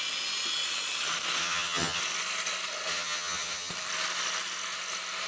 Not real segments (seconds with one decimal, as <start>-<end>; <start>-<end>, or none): 1.4-2.0; 2.9-3.7